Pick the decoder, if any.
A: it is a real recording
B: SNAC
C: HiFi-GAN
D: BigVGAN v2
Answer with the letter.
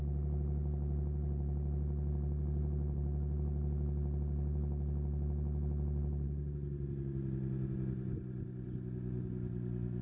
A